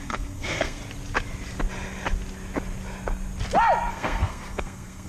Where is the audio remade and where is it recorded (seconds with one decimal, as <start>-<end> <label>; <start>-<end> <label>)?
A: 0.0-0.8 remade; 0.8-3.9 recorded; 3.9-5.1 remade